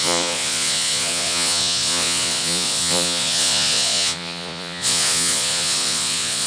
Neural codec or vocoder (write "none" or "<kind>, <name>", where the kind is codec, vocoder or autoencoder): vocoder, Vocos